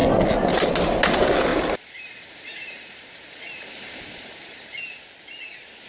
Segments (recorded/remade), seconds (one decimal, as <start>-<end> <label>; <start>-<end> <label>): 0.0-1.5 recorded; 1.5-5.0 remade; 5.0-5.9 recorded